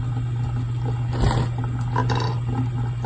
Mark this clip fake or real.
real